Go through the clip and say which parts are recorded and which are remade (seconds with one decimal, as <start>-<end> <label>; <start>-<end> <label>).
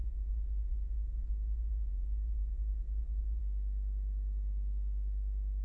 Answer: 0.0-3.4 remade; 3.4-5.6 recorded